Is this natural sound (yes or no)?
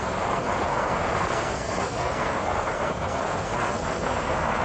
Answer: no